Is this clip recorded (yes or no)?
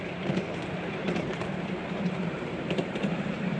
no